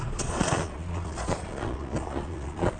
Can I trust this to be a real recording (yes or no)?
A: no